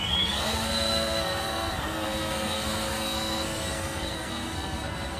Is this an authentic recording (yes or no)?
no